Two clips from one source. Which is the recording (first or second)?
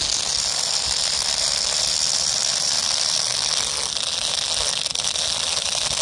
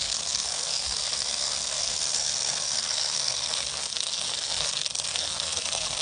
first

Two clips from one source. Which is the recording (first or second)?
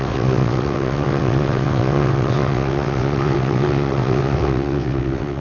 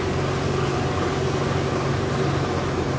second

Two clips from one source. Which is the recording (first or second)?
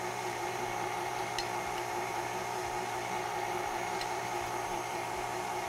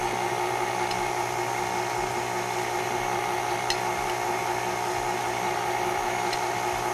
second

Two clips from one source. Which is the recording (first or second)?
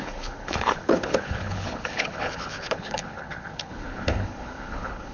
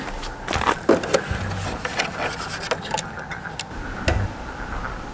second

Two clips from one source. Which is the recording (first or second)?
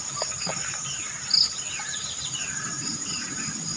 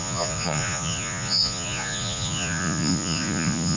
first